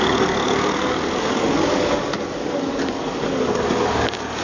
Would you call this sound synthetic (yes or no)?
yes